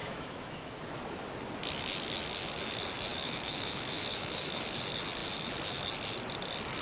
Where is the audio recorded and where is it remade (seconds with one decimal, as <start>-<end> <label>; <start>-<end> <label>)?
0.0-0.8 remade; 0.8-3.1 recorded; 3.1-4.6 remade; 4.6-6.8 recorded